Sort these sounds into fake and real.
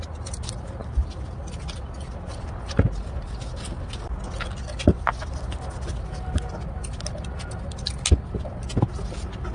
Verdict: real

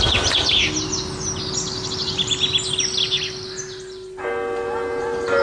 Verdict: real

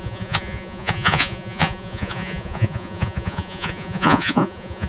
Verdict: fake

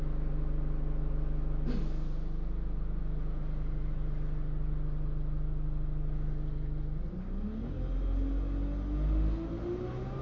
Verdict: real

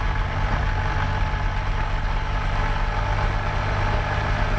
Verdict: real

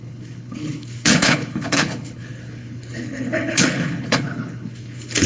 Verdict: fake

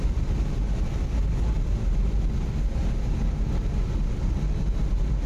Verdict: real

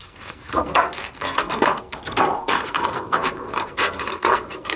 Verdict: fake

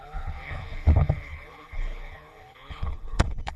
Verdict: fake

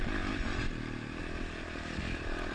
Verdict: real